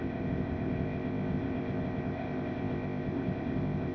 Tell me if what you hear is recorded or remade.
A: remade